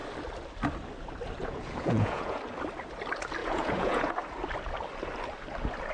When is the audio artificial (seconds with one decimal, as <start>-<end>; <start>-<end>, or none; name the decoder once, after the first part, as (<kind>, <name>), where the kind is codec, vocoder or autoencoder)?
1.4-2.4 (vocoder, Vocos); 3.4-4.1